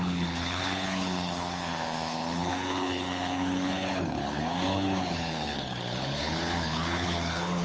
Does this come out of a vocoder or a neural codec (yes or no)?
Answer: yes